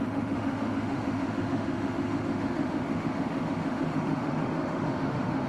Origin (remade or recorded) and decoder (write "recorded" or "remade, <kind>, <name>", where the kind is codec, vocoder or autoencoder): remade, autoencoder, DAC-VAE